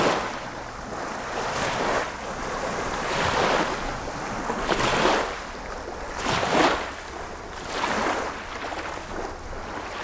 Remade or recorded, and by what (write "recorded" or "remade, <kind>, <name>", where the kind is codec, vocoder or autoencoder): recorded